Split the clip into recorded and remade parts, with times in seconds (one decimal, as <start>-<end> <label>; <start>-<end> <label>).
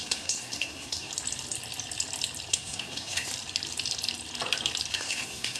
0.0-1.1 remade; 1.1-2.5 recorded; 2.5-3.3 remade; 3.3-4.9 recorded; 4.9-5.6 remade